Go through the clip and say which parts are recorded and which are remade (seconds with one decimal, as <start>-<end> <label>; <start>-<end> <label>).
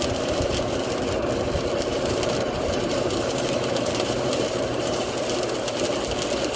0.0-1.9 recorded; 1.9-5.1 remade; 5.1-6.6 recorded